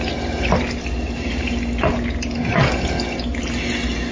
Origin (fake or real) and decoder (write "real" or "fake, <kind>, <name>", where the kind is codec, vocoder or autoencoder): real